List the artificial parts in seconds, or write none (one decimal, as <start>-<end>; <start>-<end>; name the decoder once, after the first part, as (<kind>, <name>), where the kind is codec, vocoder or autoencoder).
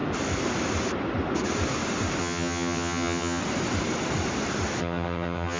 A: 2.2-3.4 (vocoder, HiFi-GAN); 4.8-5.6